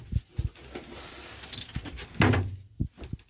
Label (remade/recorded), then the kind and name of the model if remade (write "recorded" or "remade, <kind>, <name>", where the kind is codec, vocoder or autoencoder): recorded